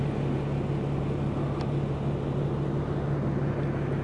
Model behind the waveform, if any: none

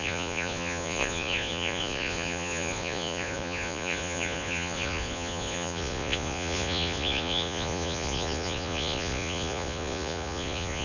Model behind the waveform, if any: vocoder, Vocos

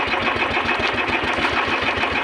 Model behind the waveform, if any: none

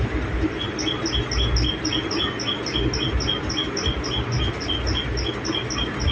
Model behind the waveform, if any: none